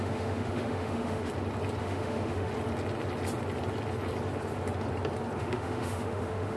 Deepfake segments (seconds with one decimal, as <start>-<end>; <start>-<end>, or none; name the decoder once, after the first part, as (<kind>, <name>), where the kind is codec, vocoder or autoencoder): 0.0-1.3 (autoencoder, DAC-VAE); 1.8-2.5; 5.4-6.6